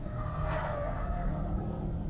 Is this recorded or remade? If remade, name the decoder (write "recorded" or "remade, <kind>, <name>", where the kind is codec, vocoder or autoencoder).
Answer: remade, codec, SNAC